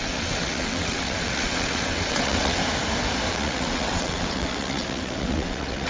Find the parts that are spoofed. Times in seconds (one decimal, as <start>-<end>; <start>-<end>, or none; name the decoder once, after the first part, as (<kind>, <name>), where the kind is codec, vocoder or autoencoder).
0.0-2.6 (vocoder, WaveNeXt); 3.3-5.9